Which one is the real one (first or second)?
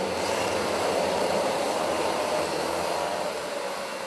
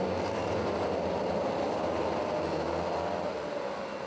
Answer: second